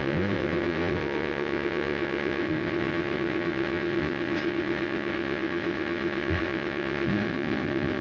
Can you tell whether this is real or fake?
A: fake